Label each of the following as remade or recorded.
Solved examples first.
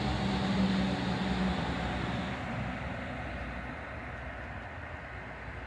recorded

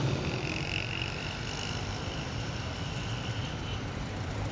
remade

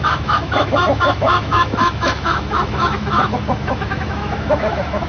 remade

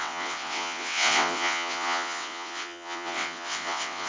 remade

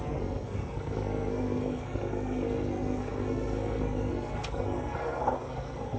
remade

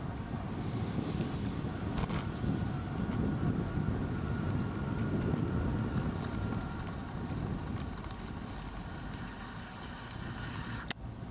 recorded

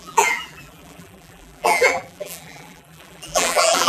remade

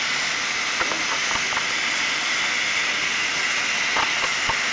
recorded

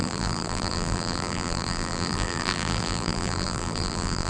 remade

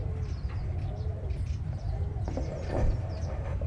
recorded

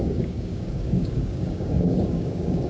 remade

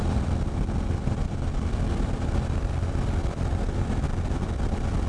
remade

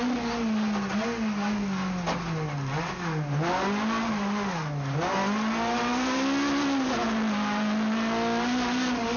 recorded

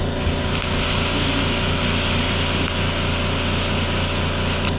recorded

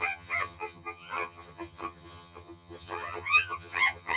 remade